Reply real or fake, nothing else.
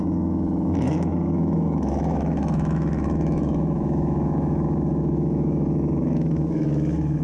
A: fake